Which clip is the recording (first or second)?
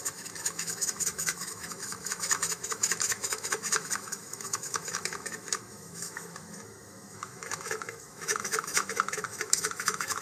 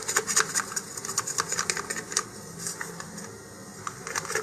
second